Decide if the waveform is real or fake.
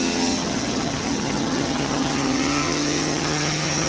fake